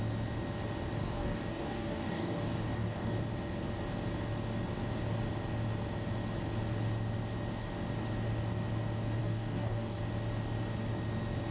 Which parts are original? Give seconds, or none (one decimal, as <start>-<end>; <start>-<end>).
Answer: 0.0-1.0; 3.2-9.2; 10.0-11.5